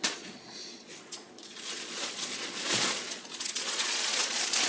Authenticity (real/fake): fake